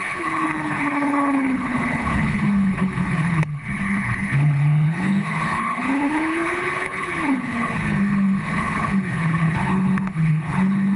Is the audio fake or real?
fake